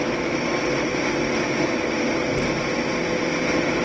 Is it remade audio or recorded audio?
recorded